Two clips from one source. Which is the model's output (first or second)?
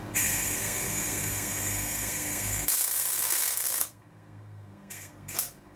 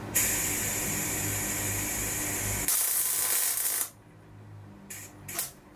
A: first